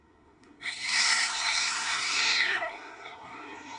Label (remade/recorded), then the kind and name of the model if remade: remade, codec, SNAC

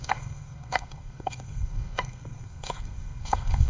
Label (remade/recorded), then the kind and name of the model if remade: remade, codec, SNAC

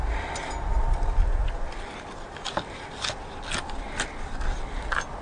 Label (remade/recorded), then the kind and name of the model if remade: recorded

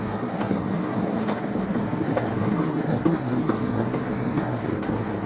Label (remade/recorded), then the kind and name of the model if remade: remade, codec, SNAC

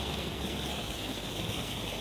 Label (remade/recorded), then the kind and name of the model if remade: remade, codec, SNAC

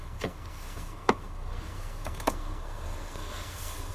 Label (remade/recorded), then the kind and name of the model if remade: remade, codec, SNAC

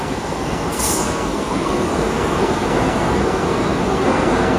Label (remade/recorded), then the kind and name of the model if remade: remade, codec, SNAC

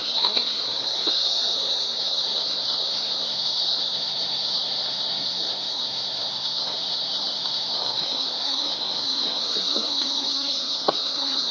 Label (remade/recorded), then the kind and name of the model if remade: remade, codec, SNAC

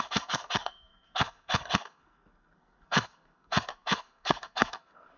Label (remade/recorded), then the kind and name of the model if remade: remade, codec, SNAC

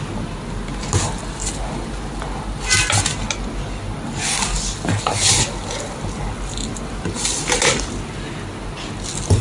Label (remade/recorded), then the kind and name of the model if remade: recorded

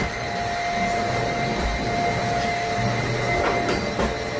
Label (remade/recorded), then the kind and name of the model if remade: recorded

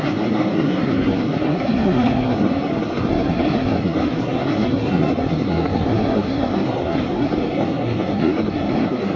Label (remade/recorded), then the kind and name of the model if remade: remade, codec, SNAC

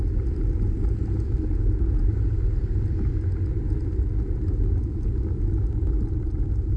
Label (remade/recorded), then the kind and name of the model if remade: recorded